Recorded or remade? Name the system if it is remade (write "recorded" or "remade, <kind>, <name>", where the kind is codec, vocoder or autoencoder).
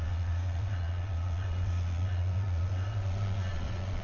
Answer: remade, vocoder, Vocos